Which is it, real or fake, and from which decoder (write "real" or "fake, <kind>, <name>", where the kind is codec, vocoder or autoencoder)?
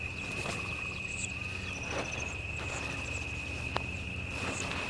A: real